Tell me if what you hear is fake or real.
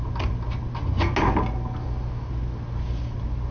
real